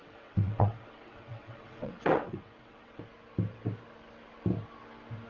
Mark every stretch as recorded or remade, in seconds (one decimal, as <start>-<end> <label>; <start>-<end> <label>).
0.0-3.0 remade; 3.0-5.3 recorded